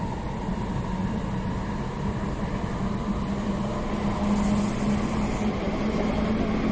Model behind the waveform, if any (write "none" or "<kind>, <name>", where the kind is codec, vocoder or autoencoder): none